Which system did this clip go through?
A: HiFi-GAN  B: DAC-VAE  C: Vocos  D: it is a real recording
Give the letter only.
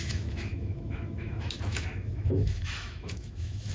B